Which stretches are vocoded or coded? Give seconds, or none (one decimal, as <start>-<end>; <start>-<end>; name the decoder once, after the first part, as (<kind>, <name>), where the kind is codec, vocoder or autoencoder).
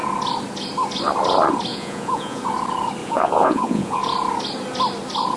1.7-2.4 (vocoder, Vocos); 3.0-4.0